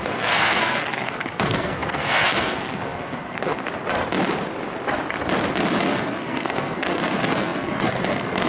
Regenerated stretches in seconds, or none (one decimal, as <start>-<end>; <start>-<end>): 0.0-3.6; 5.8-8.5